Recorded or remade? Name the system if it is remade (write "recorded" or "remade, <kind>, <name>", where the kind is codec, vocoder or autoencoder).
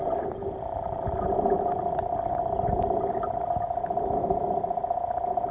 recorded